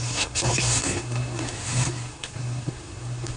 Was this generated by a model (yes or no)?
yes